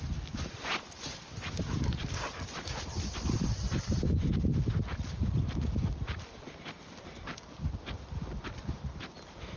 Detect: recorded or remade recorded